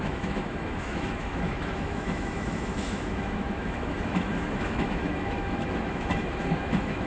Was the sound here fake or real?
fake